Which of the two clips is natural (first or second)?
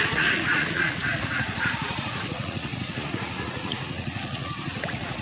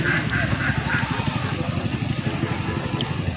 second